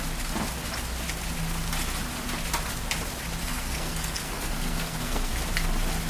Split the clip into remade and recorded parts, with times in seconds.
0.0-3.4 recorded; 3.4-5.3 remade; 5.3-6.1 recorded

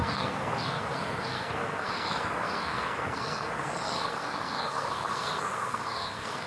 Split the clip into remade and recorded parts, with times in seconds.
0.0-6.5 remade

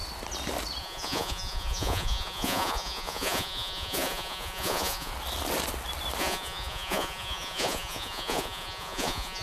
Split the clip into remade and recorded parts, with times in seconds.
0.0-0.8 recorded; 0.8-5.1 remade; 5.1-6.2 recorded; 6.2-9.4 remade

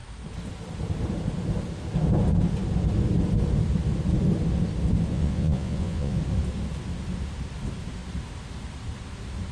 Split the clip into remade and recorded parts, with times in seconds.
0.0-5.1 recorded; 5.1-6.2 remade; 6.2-9.5 recorded

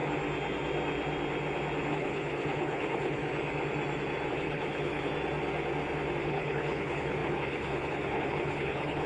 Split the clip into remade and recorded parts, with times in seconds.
0.0-1.9 recorded; 1.9-3.2 remade; 3.2-4.3 recorded; 4.3-5.1 remade; 5.1-6.2 recorded; 6.2-9.1 remade

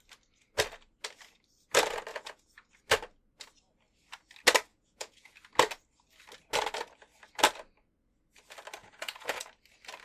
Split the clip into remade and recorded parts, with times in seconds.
0.0-2.1 recorded; 2.1-2.7 remade; 2.7-4.7 recorded; 4.7-5.3 remade; 5.3-8.8 recorded; 8.8-9.4 remade; 9.4-10.0 recorded

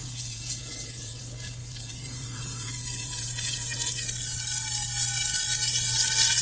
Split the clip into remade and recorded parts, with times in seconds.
0.0-1.2 remade; 1.2-1.6 recorded; 1.6-3.9 remade; 3.9-6.4 recorded

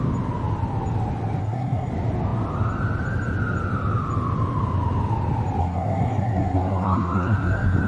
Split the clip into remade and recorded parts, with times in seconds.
0.0-1.4 recorded; 1.4-1.9 remade; 1.9-5.6 recorded; 5.6-7.9 remade